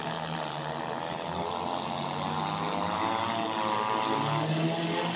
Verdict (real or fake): real